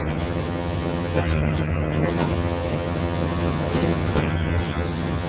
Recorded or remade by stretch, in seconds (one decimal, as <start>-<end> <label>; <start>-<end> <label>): 0.0-5.3 remade